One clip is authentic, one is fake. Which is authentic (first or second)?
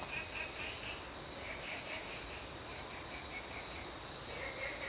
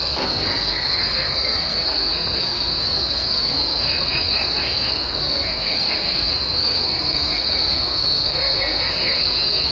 first